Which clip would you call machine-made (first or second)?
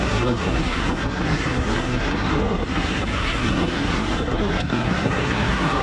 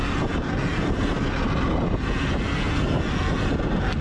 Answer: first